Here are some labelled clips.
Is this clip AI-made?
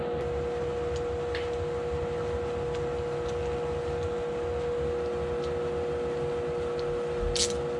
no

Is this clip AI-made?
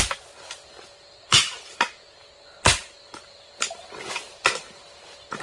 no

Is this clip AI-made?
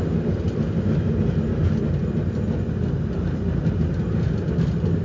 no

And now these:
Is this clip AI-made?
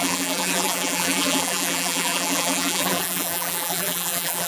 yes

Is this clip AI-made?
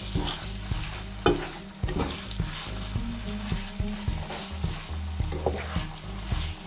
no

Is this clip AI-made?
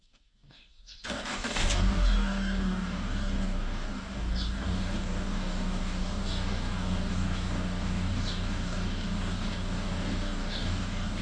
yes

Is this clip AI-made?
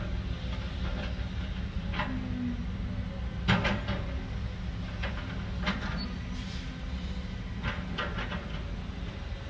no